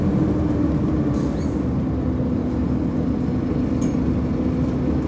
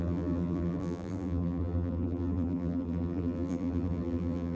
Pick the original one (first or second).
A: first